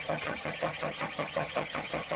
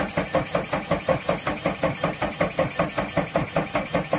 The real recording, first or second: second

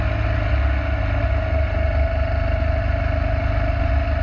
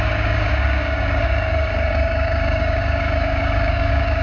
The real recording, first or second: first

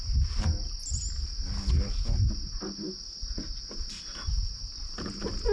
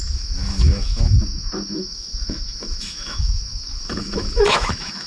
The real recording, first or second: first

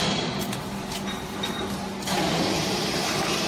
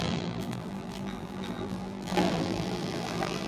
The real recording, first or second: first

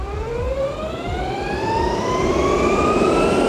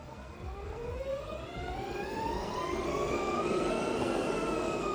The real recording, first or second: first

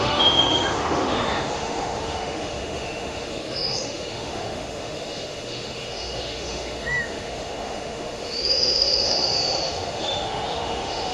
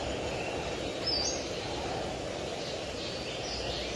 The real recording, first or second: second